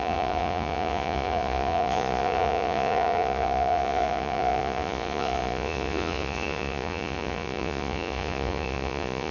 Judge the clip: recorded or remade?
remade